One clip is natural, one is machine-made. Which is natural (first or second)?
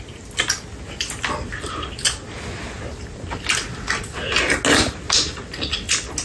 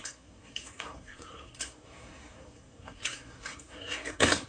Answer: first